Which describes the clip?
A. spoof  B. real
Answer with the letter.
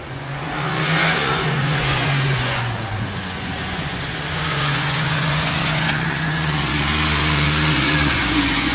A